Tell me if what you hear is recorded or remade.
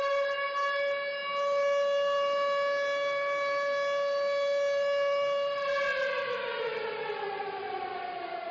recorded